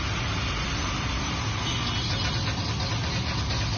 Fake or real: real